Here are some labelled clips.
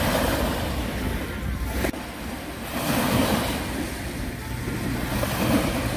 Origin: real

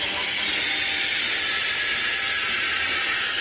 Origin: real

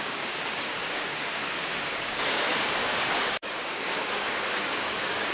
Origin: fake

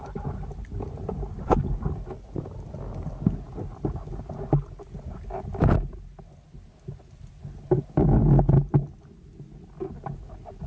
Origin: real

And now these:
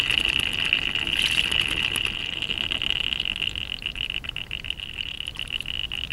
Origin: real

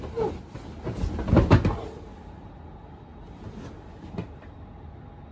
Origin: real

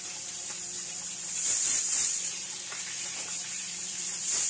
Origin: fake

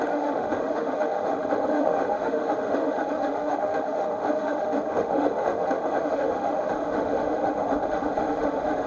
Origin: fake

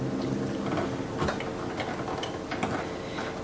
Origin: real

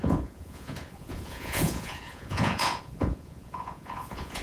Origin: fake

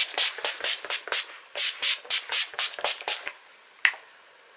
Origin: real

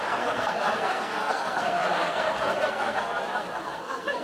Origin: fake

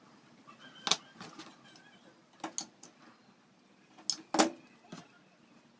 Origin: real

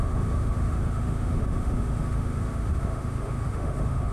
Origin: fake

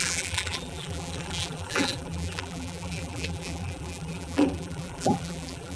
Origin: fake